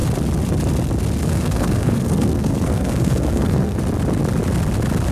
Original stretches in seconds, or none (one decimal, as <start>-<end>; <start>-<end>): 0.0-1.2; 3.8-5.1